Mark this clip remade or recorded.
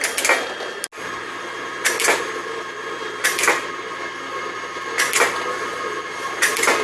recorded